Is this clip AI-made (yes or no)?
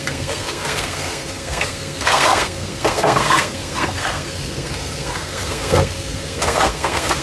yes